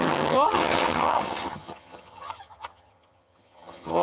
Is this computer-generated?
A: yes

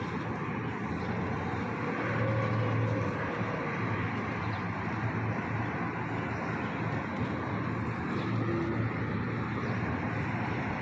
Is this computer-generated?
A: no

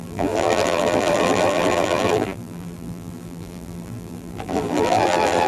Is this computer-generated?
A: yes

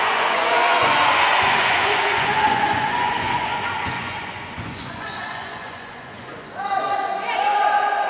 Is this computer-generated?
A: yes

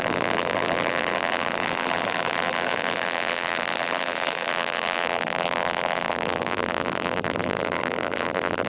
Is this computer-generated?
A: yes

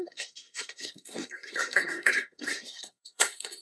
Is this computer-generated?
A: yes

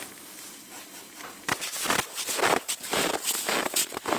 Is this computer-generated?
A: no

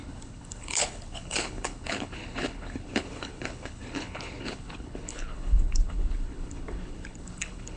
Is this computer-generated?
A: yes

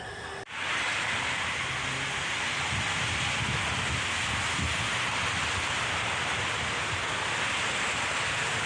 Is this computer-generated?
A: no